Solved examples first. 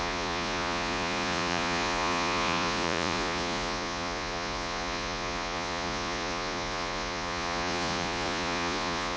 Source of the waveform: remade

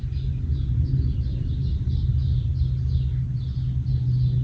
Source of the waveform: recorded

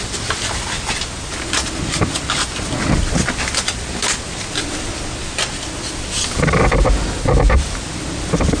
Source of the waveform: recorded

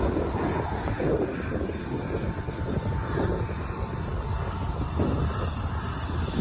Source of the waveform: recorded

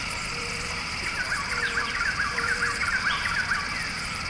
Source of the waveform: remade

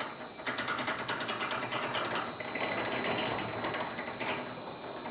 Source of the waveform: recorded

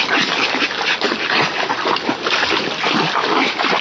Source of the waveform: remade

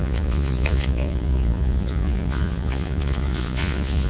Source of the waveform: remade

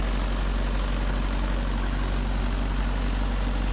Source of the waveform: recorded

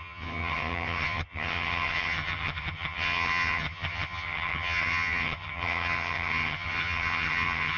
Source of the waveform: remade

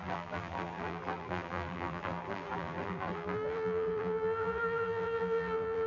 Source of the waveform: remade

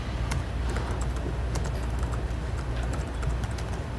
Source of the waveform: recorded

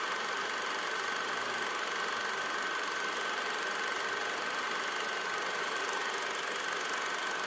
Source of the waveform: recorded